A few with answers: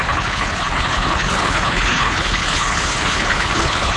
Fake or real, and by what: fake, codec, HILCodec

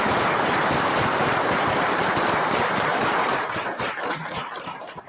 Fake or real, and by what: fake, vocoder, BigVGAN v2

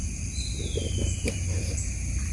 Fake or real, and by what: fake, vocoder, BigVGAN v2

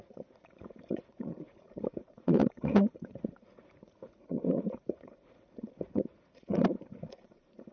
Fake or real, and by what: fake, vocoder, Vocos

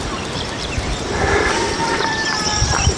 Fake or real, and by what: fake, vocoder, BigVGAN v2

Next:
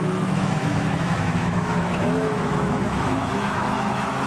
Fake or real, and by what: fake, autoencoder, DAC-VAE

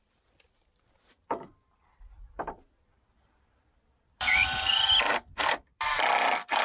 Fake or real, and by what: fake, vocoder, BigVGAN v2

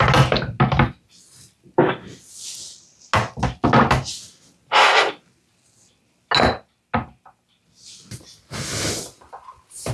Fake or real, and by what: real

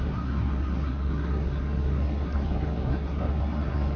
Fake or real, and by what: fake, codec, SNAC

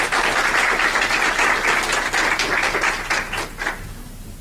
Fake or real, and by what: real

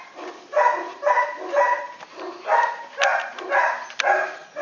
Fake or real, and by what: real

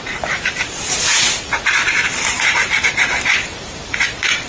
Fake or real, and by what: fake, vocoder, BigVGAN v2